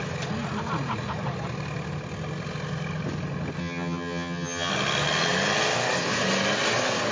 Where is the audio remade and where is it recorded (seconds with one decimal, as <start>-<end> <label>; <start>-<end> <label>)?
0.0-3.6 recorded; 3.6-4.7 remade; 4.7-7.1 recorded